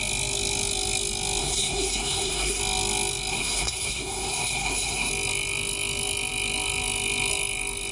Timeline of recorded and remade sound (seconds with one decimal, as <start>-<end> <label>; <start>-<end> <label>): 0.0-1.4 recorded; 1.4-2.6 remade; 2.6-3.3 recorded; 3.3-5.1 remade; 5.1-7.9 recorded